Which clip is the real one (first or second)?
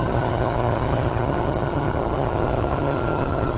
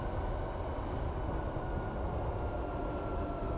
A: second